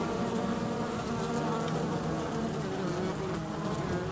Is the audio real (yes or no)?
yes